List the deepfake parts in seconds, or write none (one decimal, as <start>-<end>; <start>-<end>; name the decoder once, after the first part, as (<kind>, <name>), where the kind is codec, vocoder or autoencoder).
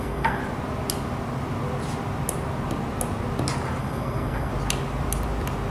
0.0-0.4 (codec, SNAC); 3.8-4.5